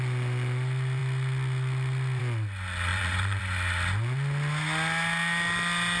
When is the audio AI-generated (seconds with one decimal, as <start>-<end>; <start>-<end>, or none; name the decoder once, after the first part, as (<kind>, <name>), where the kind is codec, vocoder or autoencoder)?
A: 2.9-3.4 (vocoder, Vocos)